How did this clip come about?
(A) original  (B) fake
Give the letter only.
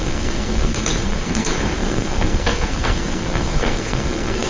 B